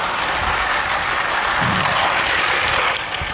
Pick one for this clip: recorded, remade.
recorded